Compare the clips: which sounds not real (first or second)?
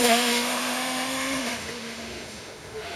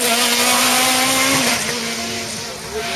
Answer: first